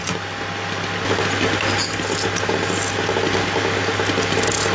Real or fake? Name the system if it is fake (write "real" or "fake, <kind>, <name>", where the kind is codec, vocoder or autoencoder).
real